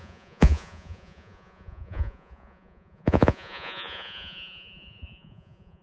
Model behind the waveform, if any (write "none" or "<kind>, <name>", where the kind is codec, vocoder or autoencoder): vocoder, Vocos